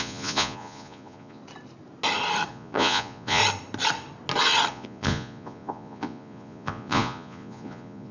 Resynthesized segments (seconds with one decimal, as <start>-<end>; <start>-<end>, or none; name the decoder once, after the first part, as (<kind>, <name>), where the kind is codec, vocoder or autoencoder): 0.0-1.4 (vocoder, Vocos); 2.5-3.4; 4.7-8.1